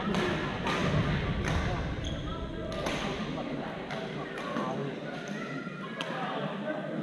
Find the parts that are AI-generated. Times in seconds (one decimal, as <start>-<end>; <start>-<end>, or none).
4.8-5.6